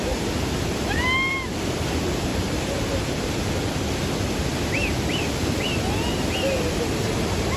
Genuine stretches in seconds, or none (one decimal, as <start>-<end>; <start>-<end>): 0.0-2.3; 3.5-7.6